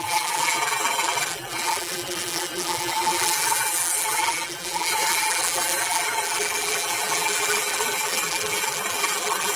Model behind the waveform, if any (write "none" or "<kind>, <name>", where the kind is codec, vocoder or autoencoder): vocoder, BigVGAN v2